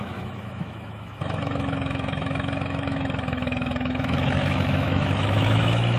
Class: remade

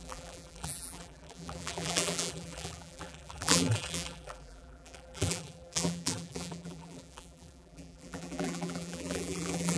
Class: remade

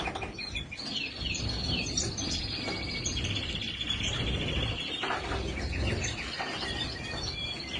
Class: recorded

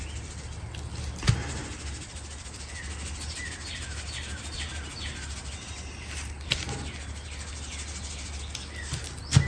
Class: recorded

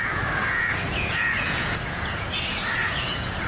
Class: remade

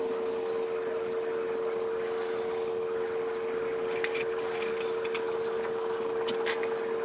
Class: recorded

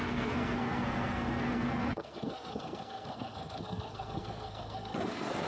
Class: remade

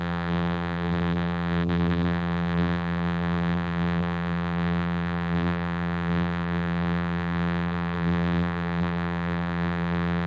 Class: remade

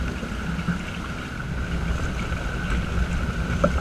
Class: recorded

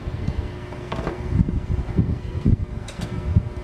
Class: remade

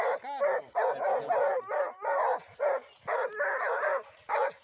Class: recorded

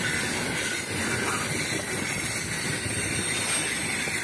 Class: recorded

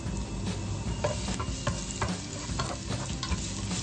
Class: recorded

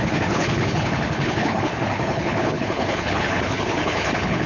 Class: remade